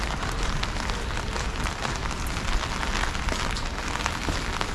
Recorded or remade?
recorded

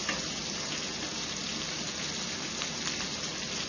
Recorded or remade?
recorded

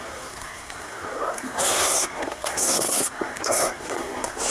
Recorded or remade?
remade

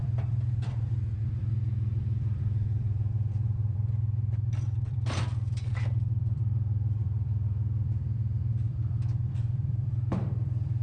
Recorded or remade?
remade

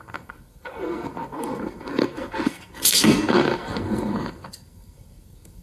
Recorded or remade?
remade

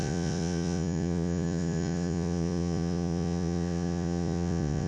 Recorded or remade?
remade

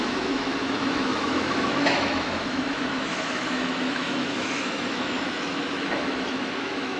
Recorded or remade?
remade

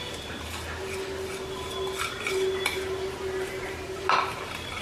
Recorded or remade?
recorded